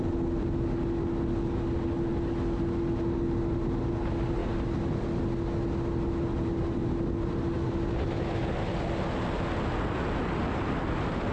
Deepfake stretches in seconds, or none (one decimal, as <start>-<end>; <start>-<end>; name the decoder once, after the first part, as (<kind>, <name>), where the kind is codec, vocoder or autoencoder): none